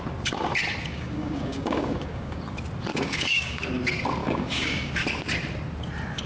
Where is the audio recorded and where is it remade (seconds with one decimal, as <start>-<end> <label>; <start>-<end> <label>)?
0.0-0.9 recorded; 0.9-2.4 remade; 2.4-2.9 recorded; 2.9-3.6 remade; 3.6-4.2 recorded; 4.2-4.9 remade; 4.9-6.3 recorded